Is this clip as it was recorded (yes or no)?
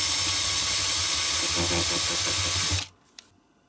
yes